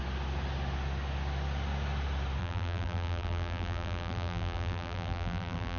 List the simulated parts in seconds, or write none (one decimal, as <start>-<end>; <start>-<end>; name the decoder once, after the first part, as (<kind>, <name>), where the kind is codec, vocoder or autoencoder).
2.4-5.8 (vocoder, BigVGAN v2)